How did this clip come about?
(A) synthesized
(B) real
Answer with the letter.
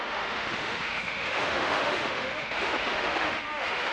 A